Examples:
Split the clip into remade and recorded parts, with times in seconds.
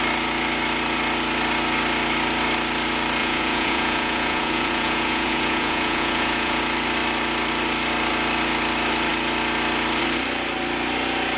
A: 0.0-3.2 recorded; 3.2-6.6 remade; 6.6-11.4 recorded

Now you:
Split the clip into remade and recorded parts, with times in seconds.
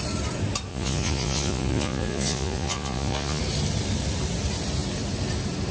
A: 0.0-0.7 recorded; 0.7-3.4 remade; 3.4-5.7 recorded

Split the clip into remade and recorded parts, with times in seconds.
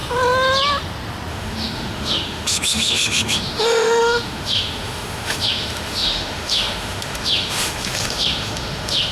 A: 0.0-1.3 recorded; 1.3-9.1 remade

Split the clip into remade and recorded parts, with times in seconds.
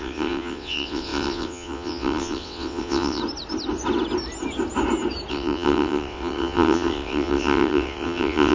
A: 0.0-3.2 remade; 3.2-5.3 recorded; 5.3-8.5 remade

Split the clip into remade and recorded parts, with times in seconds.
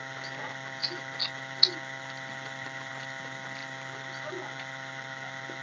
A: 0.0-5.6 recorded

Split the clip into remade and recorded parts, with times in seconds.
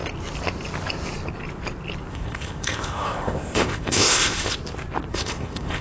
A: 0.0-2.1 recorded; 2.1-4.5 remade; 4.5-5.1 recorded; 5.1-5.8 remade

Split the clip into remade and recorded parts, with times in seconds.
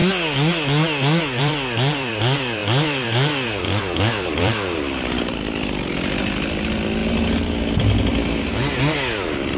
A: 0.0-1.4 recorded; 1.4-7.0 remade; 7.0-9.6 recorded